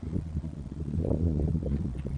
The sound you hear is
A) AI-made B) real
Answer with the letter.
A